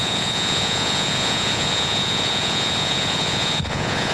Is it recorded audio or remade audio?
remade